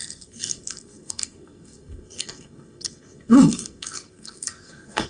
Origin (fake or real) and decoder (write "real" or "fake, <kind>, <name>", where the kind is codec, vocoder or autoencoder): fake, codec, SNAC